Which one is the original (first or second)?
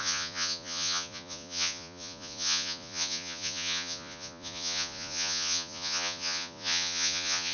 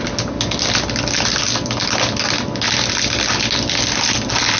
second